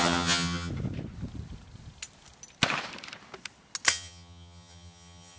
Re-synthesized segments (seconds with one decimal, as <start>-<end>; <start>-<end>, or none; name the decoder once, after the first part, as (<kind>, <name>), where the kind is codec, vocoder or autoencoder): 0.0-0.7 (vocoder, HiFi-GAN); 3.9-5.4